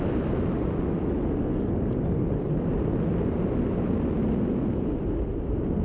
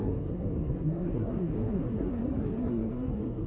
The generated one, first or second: second